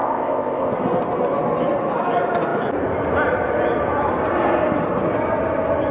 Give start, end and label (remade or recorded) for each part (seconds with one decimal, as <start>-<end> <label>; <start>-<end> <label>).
0.0-0.7 remade; 0.7-5.9 recorded